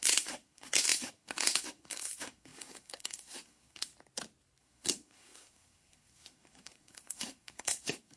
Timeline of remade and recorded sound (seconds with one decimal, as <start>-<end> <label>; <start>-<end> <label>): 0.0-3.9 remade; 3.9-4.6 recorded; 4.6-8.2 remade